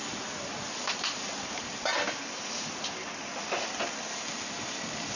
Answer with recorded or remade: recorded